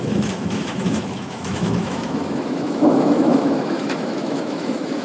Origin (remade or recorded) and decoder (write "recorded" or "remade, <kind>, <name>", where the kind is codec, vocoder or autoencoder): remade, autoencoder, DAC-VAE